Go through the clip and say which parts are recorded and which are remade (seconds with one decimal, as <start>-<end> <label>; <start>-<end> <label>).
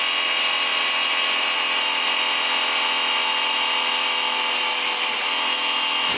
0.0-6.2 recorded